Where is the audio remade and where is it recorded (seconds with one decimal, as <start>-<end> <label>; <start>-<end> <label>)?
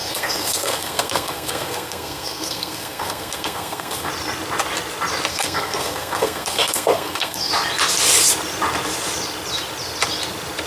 0.0-4.1 remade; 4.1-5.3 recorded; 5.3-7.5 remade; 7.5-10.7 recorded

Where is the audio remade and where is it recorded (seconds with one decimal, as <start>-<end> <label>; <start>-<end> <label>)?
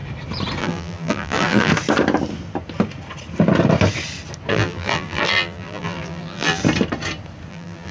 0.0-0.6 recorded; 0.6-1.7 remade; 1.7-4.5 recorded; 4.5-6.6 remade; 6.6-7.5 recorded; 7.5-7.9 remade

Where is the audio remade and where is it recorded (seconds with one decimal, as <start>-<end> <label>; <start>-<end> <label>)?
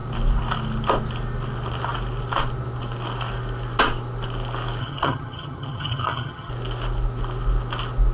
0.0-4.8 recorded; 4.8-6.5 remade; 6.5-8.1 recorded